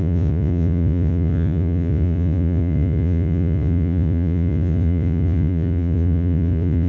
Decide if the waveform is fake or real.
fake